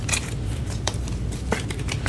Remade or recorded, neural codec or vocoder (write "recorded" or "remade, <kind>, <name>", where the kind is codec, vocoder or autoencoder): remade, vocoder, BigVGAN v2